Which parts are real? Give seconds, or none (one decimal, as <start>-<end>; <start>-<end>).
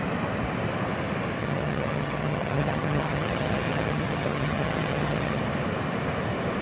0.0-1.4; 5.4-6.6